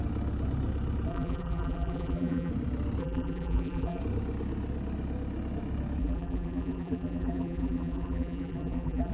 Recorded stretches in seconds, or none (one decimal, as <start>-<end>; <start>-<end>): 0.0-1.1; 2.5-3.0; 4.0-6.0